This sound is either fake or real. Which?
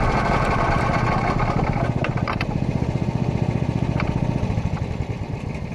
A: real